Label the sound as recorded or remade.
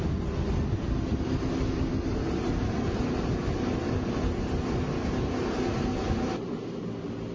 recorded